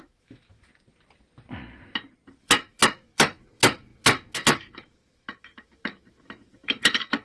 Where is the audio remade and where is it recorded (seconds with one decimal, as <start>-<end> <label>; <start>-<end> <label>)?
0.0-0.7 remade; 0.7-2.4 recorded; 2.4-7.2 remade